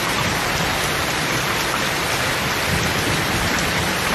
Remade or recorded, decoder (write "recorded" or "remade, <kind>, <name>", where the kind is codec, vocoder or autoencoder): remade, vocoder, BigVGAN v2